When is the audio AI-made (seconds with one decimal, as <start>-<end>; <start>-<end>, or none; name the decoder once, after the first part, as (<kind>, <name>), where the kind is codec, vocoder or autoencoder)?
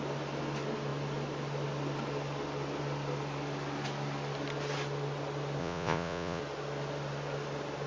5.6-6.4 (vocoder, Vocos)